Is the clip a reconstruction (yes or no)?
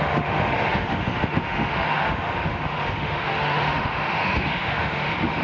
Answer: yes